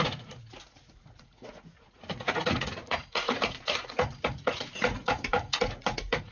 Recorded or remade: remade